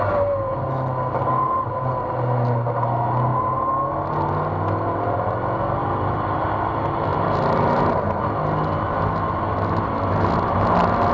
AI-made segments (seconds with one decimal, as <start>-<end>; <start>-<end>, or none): 7.1-7.8